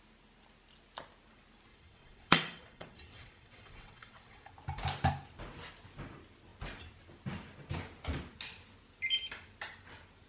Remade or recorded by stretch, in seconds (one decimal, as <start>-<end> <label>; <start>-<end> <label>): 0.0-1.7 recorded; 1.7-4.5 remade; 4.5-10.3 recorded